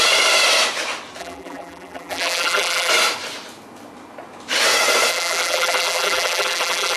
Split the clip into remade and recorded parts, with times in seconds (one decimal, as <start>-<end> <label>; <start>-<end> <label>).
0.0-1.2 recorded; 1.2-2.9 remade; 2.9-5.1 recorded; 5.1-7.0 remade